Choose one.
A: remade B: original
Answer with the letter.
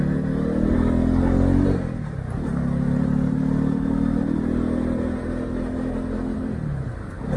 B